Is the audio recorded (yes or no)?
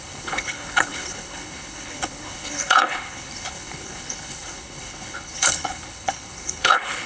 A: no